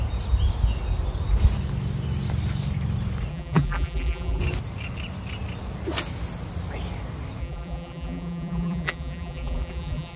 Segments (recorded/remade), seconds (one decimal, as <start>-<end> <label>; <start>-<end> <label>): 0.0-3.3 recorded; 3.3-4.4 remade; 4.4-7.4 recorded; 7.4-10.2 remade